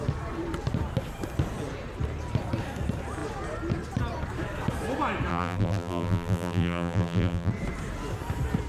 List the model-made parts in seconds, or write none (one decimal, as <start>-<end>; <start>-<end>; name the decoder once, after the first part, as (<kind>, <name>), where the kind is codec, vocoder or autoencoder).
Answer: 5.3-7.5 (vocoder, BigVGAN v2)